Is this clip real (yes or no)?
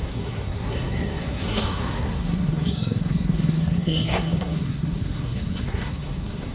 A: no